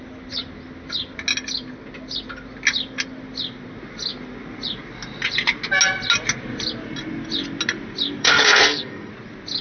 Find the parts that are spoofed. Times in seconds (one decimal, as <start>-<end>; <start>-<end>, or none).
8.2-9.1